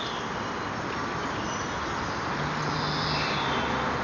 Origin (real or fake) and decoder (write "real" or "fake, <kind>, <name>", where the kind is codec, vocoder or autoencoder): real